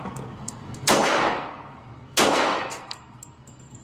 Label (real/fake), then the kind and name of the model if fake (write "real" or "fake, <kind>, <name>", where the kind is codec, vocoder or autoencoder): fake, codec, SNAC